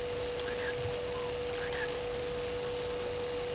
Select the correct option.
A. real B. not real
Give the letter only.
A